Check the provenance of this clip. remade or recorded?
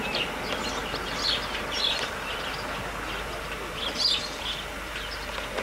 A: recorded